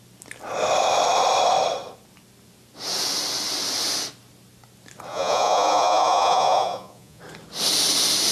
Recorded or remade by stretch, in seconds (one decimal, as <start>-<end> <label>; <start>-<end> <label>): 0.0-5.1 recorded; 5.1-7.2 remade; 7.2-8.3 recorded